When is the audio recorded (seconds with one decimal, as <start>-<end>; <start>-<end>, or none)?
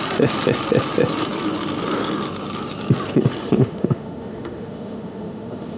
0.0-3.4